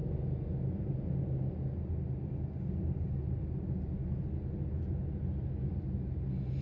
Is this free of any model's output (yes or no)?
yes